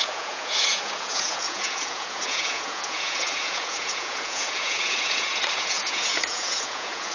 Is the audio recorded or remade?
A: remade